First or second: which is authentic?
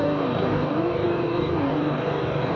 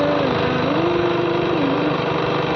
second